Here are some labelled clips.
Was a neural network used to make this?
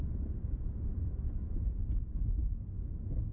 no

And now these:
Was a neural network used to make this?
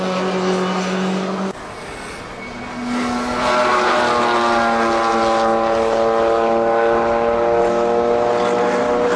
no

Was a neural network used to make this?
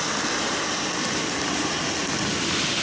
no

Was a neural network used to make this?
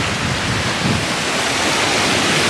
no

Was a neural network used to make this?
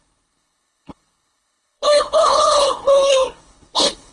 yes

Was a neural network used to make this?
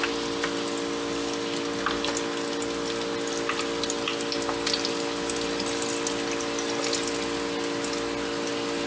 no